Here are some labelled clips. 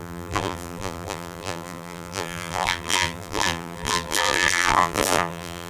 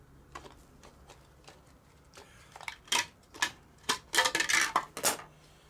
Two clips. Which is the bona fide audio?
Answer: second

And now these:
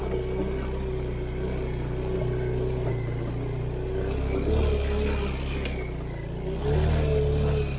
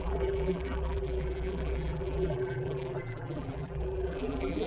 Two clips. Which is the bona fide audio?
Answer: first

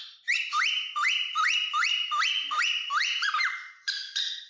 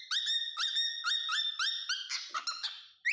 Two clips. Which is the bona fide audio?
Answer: second